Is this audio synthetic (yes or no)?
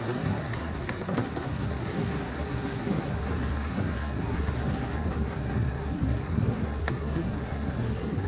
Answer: yes